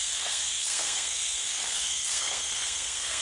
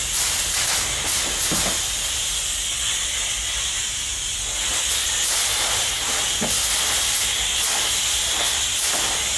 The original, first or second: second